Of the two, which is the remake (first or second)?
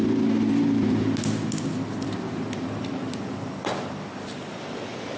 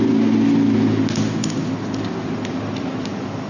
first